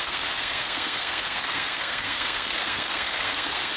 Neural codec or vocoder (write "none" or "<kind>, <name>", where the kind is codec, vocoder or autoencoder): codec, SNAC